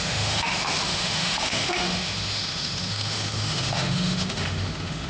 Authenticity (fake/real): fake